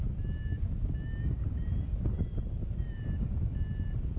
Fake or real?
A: real